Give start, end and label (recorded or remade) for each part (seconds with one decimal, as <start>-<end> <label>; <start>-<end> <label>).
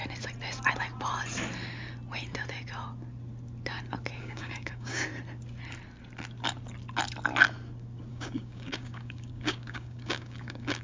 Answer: 0.0-4.2 recorded; 4.2-5.1 remade; 5.1-8.1 recorded; 8.1-10.8 remade